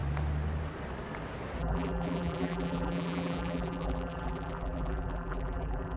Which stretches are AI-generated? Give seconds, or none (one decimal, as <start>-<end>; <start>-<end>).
1.6-6.0